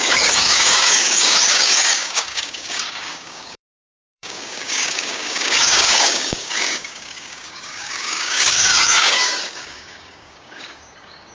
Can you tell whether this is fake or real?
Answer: fake